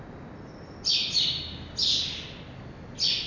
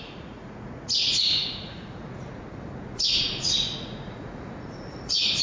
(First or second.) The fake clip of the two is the second